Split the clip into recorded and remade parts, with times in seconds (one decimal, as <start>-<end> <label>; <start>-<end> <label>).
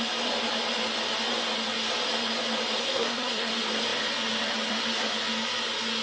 0.0-2.8 recorded; 2.8-3.5 remade; 3.5-6.0 recorded